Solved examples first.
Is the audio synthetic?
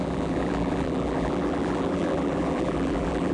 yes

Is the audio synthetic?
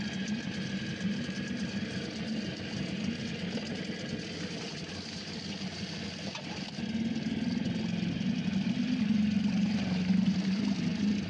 no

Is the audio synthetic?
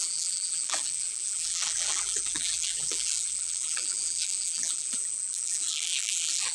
yes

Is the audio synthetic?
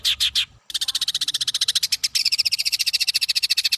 no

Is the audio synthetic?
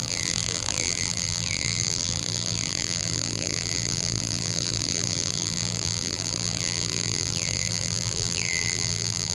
yes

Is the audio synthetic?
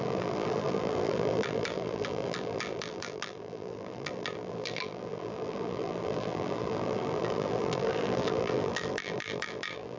yes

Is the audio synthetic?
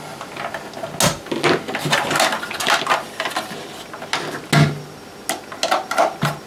no